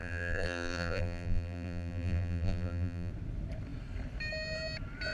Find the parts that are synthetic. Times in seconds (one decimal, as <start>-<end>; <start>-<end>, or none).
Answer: 0.0-3.1